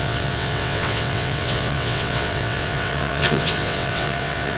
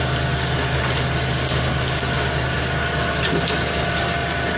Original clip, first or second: second